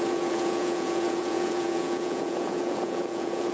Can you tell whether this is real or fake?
fake